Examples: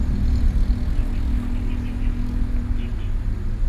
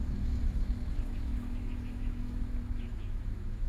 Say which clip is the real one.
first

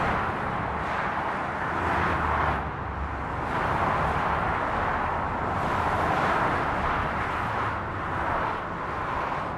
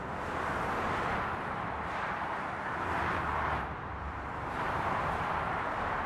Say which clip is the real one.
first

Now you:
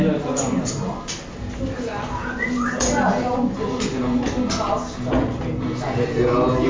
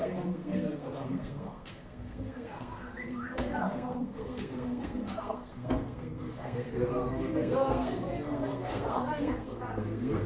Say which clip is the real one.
first